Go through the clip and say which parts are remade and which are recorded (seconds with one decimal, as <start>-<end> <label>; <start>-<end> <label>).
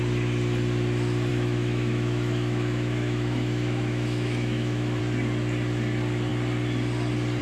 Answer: 0.0-1.3 recorded; 1.3-5.0 remade; 5.0-7.4 recorded